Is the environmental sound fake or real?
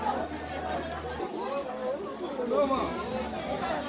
real